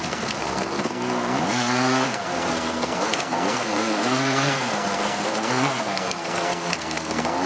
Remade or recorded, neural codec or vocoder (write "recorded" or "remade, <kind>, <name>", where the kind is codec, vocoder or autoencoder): remade, codec, SNAC